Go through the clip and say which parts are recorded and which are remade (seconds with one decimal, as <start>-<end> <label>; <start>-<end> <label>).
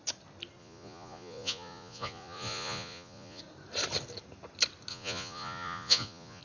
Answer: 0.0-0.6 recorded; 0.6-3.4 remade; 3.4-4.9 recorded; 4.9-6.4 remade